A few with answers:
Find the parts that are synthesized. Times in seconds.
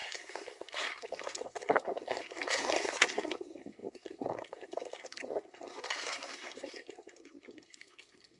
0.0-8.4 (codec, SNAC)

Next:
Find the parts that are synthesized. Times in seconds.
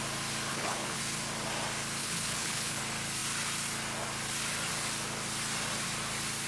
0.5-1.0 (codec, HILCodec); 2.0-2.8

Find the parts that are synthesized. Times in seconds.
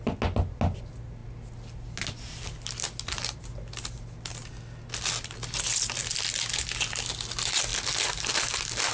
none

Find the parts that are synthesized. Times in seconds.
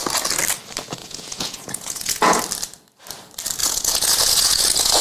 1.0-2.4 (vocoder, Vocos); 3.6-5.0